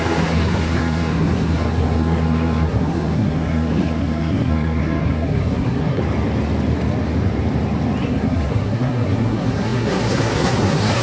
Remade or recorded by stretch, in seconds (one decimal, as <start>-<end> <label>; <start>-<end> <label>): 0.0-6.0 remade; 6.0-8.0 recorded; 8.0-11.0 remade